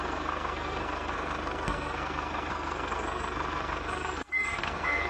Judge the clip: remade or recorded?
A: remade